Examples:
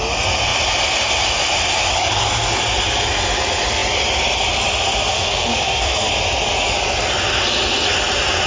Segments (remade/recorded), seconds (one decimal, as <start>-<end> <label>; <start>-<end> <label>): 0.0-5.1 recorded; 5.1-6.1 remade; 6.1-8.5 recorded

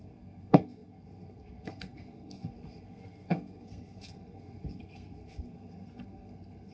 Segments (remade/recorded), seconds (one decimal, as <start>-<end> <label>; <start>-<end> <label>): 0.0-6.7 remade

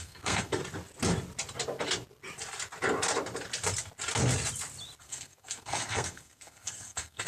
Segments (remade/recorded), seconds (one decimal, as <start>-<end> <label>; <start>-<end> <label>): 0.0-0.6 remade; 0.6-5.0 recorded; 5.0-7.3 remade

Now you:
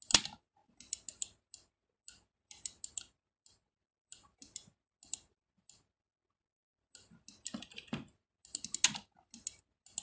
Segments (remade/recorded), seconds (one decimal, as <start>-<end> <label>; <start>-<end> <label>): 0.0-10.0 recorded

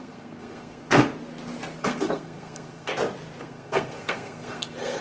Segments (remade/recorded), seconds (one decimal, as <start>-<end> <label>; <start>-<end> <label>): 0.0-1.1 remade; 1.1-1.8 recorded; 1.8-2.9 remade; 2.9-3.4 recorded; 3.4-5.0 remade